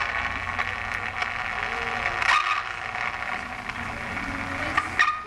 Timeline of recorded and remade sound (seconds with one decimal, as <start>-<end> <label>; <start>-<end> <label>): 0.0-5.3 recorded